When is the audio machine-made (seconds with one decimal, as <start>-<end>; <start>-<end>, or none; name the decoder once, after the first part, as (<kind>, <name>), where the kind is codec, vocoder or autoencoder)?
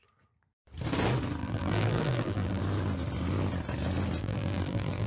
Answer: 1.4-2.6 (vocoder, BigVGAN v2); 4.2-5.1